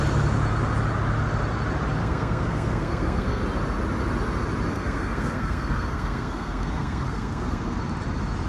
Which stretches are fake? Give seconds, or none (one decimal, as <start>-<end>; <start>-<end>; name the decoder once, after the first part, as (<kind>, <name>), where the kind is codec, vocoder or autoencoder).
2.0-3.4 (codec, SNAC); 4.7-7.8